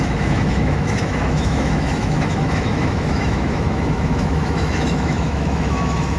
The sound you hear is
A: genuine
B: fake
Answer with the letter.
B